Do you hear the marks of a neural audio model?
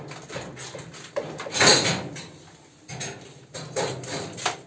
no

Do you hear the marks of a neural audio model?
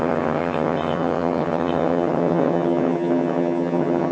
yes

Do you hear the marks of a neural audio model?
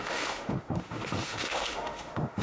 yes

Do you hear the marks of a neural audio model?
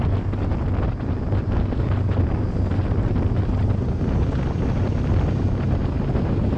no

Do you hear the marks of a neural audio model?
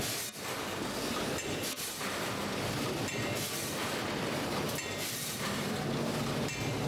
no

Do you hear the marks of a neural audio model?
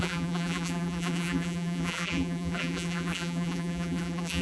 yes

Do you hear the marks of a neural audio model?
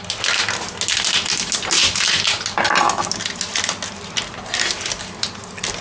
no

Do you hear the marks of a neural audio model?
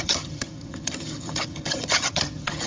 yes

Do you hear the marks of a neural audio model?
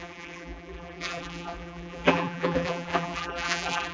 yes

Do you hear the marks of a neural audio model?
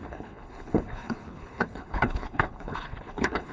yes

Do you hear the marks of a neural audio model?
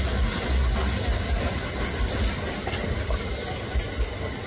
no